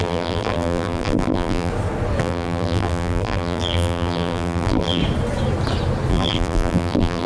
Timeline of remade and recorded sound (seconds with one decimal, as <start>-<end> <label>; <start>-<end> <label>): 0.0-1.7 remade; 1.7-2.2 recorded; 2.2-5.0 remade; 5.0-6.1 recorded; 6.1-7.3 remade